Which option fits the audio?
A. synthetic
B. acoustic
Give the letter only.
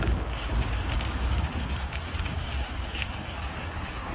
A